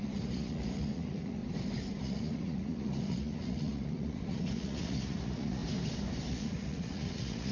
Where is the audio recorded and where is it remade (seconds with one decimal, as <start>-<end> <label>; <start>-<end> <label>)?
0.0-1.4 remade; 1.4-2.0 recorded; 2.0-5.6 remade; 5.6-6.3 recorded; 6.3-7.5 remade